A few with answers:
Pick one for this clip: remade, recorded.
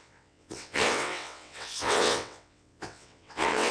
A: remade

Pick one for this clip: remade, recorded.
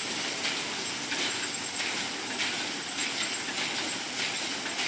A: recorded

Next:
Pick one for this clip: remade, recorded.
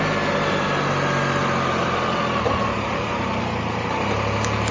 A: recorded